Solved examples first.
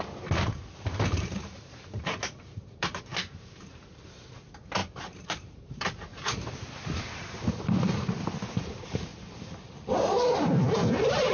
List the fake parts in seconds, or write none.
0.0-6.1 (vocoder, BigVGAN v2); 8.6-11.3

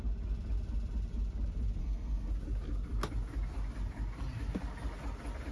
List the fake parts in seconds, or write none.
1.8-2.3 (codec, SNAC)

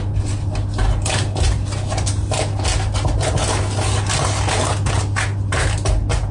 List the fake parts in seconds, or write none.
none

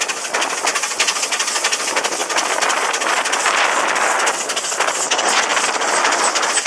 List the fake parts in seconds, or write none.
none